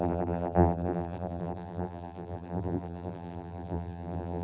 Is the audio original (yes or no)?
no